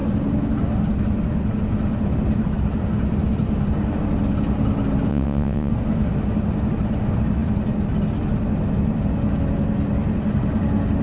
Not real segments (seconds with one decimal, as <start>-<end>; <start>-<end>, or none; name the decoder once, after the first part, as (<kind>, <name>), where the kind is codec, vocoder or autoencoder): 5.1-5.7 (vocoder, WaveNeXt)